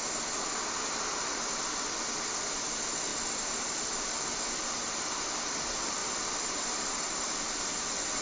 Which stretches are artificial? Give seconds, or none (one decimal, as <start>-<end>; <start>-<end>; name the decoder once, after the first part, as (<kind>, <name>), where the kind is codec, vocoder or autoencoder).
3.1-5.3 (vocoder, BigVGAN v2); 6.0-7.6